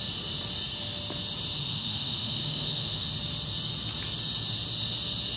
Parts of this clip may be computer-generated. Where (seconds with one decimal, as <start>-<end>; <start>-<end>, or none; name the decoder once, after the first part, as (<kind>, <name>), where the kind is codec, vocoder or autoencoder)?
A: 1.6-3.1 (autoencoder, DAC-VAE)